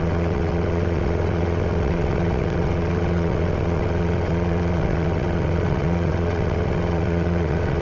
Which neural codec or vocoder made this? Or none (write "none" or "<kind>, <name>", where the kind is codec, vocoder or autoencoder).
vocoder, WaveNeXt